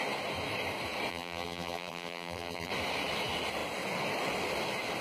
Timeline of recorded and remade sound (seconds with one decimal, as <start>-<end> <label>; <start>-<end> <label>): 0.0-1.1 recorded; 1.1-2.7 remade; 2.7-5.0 recorded